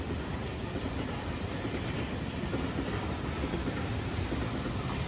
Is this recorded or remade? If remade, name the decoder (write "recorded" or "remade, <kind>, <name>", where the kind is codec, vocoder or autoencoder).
recorded